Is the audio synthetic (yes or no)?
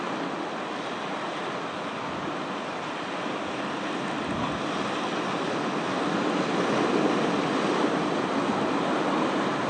no